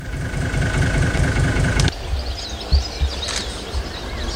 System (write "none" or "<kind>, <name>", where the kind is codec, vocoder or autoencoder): none